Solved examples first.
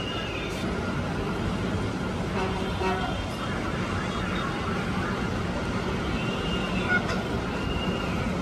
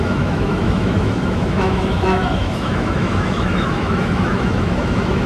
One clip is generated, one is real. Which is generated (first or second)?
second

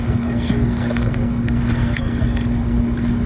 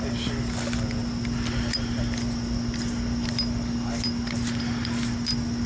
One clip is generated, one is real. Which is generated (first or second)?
first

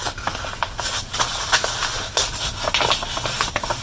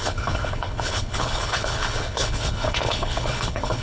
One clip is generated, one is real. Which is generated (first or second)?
second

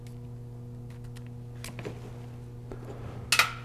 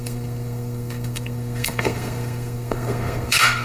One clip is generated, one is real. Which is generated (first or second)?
second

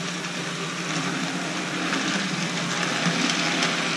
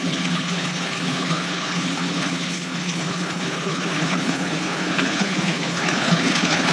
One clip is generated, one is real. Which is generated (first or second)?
second